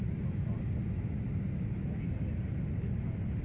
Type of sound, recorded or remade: recorded